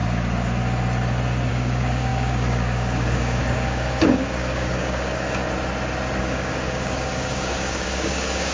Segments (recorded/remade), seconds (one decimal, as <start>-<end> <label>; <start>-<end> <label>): 0.0-1.5 recorded; 1.5-5.4 remade; 5.4-6.2 recorded; 6.2-8.5 remade